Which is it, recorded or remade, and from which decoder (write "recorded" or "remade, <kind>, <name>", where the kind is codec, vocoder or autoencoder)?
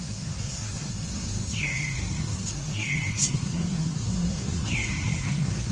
remade, codec, SNAC